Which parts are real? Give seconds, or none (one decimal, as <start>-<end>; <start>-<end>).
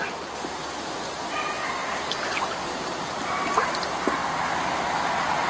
0.0-1.8; 5.1-5.5